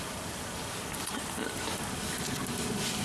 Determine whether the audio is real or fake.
real